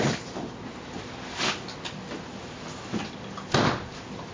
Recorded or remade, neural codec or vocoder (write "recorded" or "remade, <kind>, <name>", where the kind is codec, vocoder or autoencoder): recorded